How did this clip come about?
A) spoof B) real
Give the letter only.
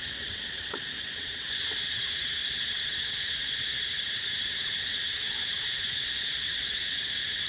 A